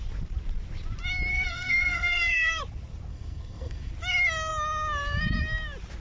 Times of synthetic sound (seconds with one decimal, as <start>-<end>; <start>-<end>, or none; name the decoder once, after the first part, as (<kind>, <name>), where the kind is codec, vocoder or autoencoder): 1.3-2.6 (codec, SNAC); 3.1-3.9